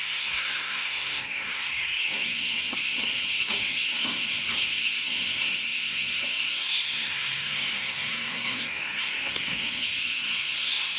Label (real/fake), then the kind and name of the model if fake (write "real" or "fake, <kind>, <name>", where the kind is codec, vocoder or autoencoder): fake, codec, SNAC